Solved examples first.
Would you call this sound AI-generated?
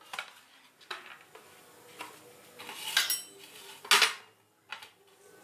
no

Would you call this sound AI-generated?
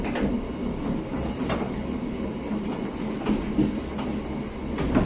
no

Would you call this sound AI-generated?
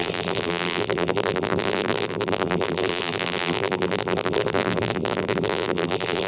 yes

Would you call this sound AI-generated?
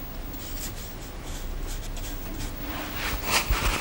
no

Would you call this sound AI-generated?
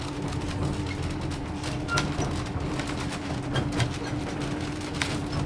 no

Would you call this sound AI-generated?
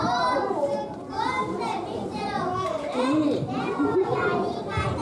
yes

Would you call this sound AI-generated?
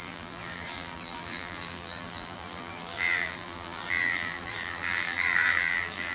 yes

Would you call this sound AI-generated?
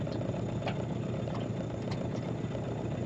no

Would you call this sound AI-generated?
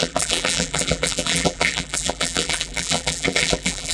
yes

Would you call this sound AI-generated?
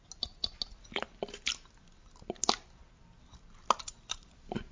no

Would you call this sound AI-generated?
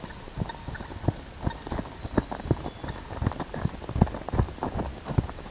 no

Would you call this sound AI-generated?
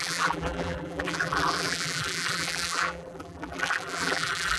yes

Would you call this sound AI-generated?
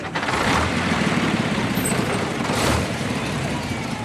yes